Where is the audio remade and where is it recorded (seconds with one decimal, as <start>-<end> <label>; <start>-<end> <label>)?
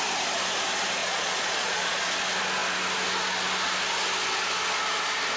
0.0-1.0 recorded; 1.0-2.0 remade; 2.0-5.4 recorded